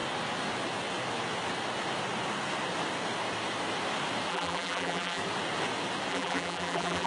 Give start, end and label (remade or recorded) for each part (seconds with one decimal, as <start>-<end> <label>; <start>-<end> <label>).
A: 0.0-4.3 recorded; 4.3-5.2 remade; 5.2-6.1 recorded; 6.1-7.1 remade

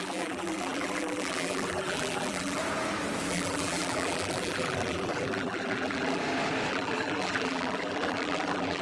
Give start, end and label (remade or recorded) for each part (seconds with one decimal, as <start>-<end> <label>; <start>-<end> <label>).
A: 0.0-2.6 remade; 2.6-3.3 recorded; 3.3-6.2 remade; 6.2-6.7 recorded; 6.7-8.8 remade

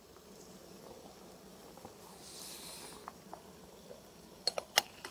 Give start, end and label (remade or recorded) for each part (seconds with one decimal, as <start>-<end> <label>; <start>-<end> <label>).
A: 0.0-5.1 recorded

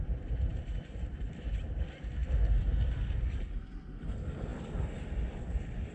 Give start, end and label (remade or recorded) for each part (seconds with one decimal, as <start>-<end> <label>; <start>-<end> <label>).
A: 0.0-0.5 recorded; 0.5-1.0 remade; 1.0-5.9 recorded

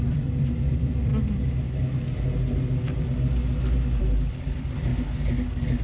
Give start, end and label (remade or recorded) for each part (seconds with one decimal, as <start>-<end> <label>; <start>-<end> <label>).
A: 0.0-1.1 remade; 1.1-4.0 recorded; 4.0-4.9 remade; 4.9-5.8 recorded